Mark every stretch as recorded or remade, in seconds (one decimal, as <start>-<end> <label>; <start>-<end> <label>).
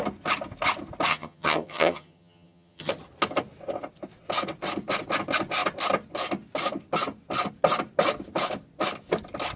0.0-1.1 recorded; 1.1-2.9 remade; 2.9-9.6 recorded